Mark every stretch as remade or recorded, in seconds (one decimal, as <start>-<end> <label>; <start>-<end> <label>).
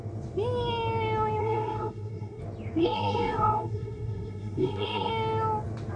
0.0-1.4 recorded; 1.4-2.4 remade; 2.4-2.8 recorded; 2.8-5.1 remade; 5.1-6.0 recorded